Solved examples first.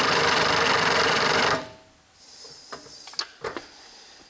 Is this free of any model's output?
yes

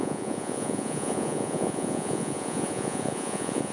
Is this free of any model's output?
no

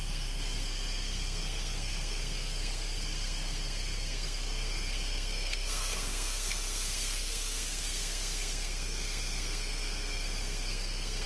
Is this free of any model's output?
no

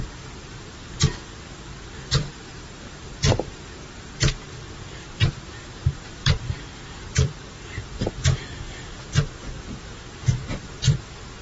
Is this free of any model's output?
no